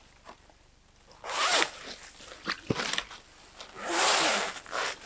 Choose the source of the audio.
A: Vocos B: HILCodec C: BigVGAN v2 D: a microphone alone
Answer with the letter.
D